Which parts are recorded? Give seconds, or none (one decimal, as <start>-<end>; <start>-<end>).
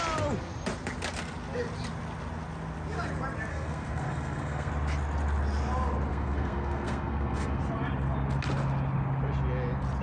0.0-3.5; 4.7-6.1; 7.6-10.0